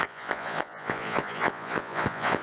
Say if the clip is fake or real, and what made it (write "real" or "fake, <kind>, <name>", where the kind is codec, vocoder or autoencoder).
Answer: fake, vocoder, Vocos